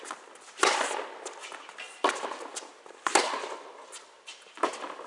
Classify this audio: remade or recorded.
recorded